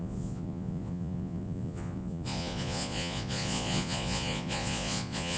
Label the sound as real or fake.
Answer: fake